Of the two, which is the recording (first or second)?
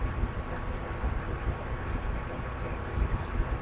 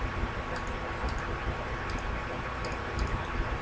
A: second